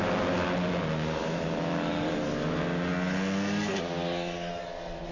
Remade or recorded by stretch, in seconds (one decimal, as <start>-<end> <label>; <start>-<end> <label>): 0.0-5.1 recorded